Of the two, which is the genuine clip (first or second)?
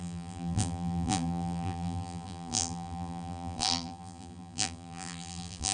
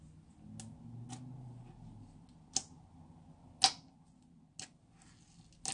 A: second